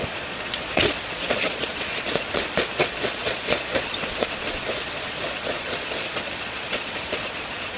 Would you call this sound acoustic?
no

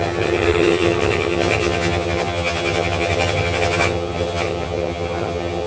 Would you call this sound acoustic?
no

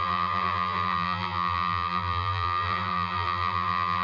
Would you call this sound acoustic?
no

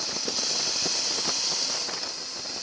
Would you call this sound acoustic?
yes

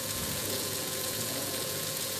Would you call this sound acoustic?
no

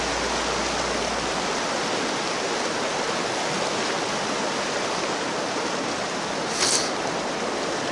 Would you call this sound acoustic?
yes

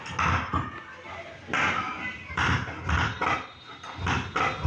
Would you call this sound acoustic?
yes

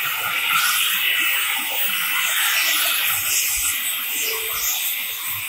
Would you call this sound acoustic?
yes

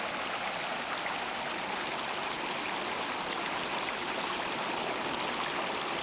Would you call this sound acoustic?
yes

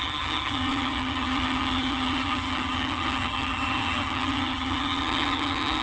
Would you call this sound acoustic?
no